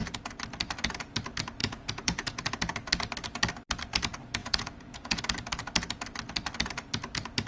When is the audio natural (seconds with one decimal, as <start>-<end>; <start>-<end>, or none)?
0.0-1.6; 2.4-4.4; 5.2-7.5